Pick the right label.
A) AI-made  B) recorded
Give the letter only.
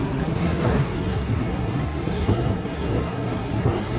A